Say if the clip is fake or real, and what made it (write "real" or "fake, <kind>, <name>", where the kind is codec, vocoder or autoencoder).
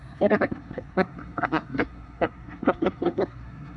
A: fake, codec, SNAC